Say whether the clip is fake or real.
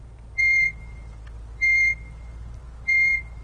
real